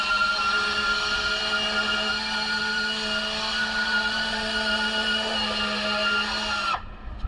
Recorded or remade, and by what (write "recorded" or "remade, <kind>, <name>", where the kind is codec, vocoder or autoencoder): recorded